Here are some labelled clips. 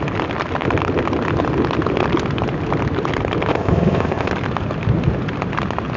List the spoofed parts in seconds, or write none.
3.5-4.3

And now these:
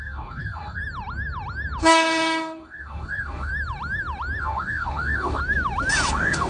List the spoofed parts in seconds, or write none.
0.0-0.8; 1.8-3.5; 4.4-5.4; 6.1-6.5

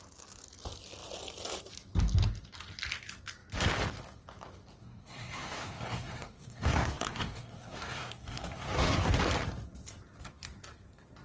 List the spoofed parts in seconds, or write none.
4.8-9.1

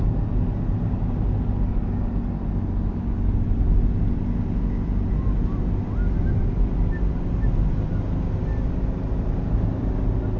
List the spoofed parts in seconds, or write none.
none

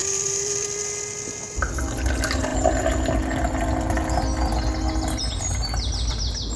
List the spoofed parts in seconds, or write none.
0.0-0.8